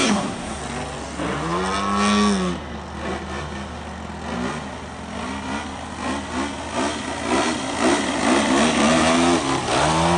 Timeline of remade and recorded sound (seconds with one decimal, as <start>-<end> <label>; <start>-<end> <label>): 0.0-0.6 remade; 0.6-10.2 recorded